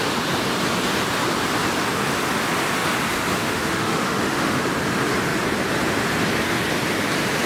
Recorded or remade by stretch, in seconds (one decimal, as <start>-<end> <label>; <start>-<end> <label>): 0.0-3.3 recorded; 3.3-4.6 remade; 4.6-7.5 recorded